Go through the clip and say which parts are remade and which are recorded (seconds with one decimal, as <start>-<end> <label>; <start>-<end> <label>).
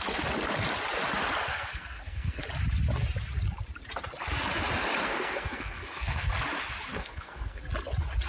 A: 0.0-1.5 recorded; 1.5-2.4 remade; 2.4-5.0 recorded; 5.0-6.3 remade; 6.3-6.9 recorded; 6.9-7.6 remade; 7.6-8.3 recorded